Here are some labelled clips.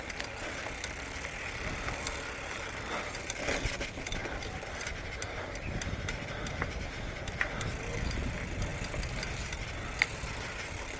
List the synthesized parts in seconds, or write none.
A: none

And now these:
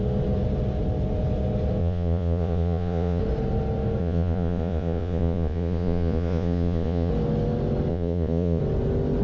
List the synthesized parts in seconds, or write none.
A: 1.8-3.2 (vocoder, Vocos); 4.0-7.1; 7.9-8.6

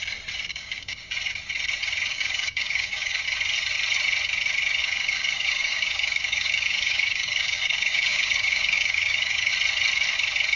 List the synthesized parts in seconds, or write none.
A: 0.5-1.1 (codec, DAC); 2.1-3.2; 4.8-9.5

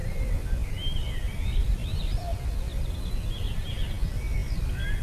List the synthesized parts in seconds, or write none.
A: 0.0-3.0 (vocoder, BigVGAN v2); 4.4-5.0

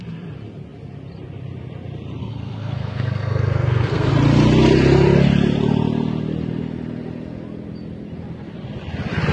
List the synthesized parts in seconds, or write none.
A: 2.2-4.1 (codec, SNAC)

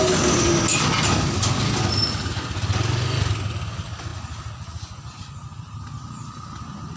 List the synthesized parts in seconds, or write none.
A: none

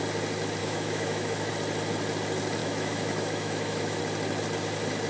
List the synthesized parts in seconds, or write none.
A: 0.6-1.5 (autoencoder, DAC-VAE); 2.6-4.0